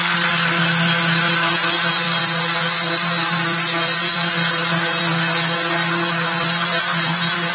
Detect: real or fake real